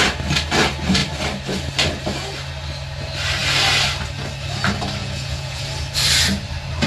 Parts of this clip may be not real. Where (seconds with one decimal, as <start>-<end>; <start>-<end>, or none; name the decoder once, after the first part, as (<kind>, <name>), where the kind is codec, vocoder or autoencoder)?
5.0-5.6 (vocoder, Vocos)